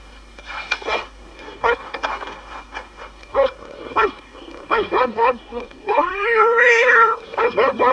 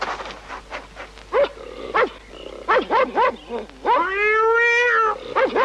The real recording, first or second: second